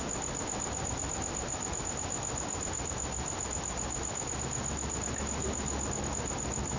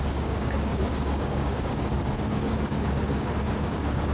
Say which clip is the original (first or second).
first